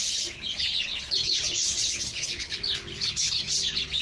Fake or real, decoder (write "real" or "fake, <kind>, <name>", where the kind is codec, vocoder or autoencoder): fake, codec, HILCodec